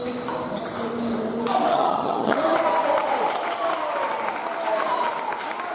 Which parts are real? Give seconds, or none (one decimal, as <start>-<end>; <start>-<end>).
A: 0.0-1.7; 2.4-5.7